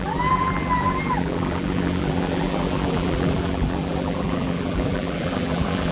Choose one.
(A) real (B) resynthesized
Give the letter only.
B